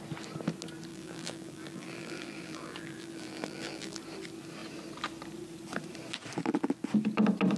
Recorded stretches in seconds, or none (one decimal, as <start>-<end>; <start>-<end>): 0.0-0.9; 4.0-7.6